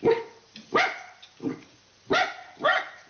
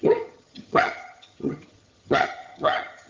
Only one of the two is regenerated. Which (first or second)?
second